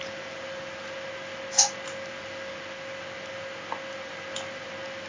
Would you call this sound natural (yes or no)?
yes